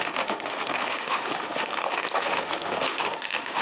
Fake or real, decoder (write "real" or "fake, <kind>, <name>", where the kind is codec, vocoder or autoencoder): fake, autoencoder, DAC-VAE